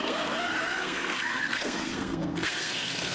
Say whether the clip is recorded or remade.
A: remade